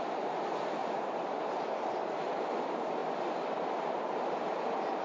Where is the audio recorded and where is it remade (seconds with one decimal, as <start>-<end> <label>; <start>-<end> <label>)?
0.0-5.0 recorded

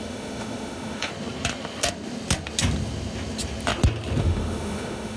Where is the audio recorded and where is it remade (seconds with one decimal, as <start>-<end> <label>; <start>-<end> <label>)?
0.0-1.1 remade; 1.1-4.2 recorded; 4.2-5.2 remade